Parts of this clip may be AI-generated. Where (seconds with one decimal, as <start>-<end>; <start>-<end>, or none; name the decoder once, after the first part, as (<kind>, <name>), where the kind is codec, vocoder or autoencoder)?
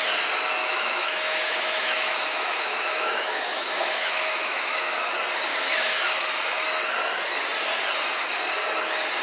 0.6-5.1 (autoencoder, DAC-VAE); 5.5-6.2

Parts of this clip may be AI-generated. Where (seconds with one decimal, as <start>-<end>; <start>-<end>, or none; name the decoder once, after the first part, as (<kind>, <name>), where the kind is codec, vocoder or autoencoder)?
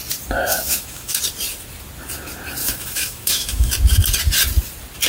0.5-1.2 (autoencoder, DAC-VAE); 2.6-3.7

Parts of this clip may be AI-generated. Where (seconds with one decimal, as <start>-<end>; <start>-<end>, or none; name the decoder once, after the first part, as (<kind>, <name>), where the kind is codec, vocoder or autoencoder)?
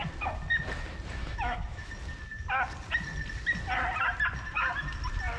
1.2-1.9 (autoencoder, DAC-VAE)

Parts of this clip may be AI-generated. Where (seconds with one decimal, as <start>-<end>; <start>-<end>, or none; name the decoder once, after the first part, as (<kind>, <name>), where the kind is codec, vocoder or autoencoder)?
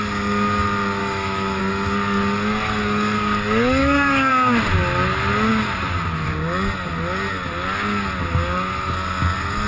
1.0-1.6 (autoencoder, DAC-VAE); 3.8-4.3